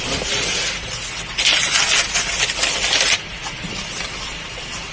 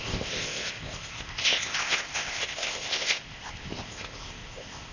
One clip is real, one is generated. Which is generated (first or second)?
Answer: second